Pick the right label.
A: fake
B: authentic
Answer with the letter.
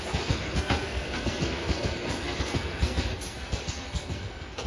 A